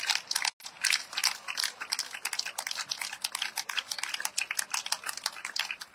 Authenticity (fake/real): real